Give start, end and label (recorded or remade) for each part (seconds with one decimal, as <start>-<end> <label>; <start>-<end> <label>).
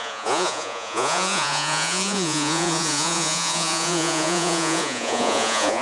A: 0.0-5.8 remade